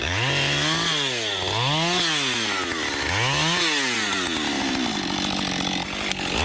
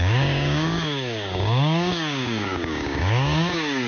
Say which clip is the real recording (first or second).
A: first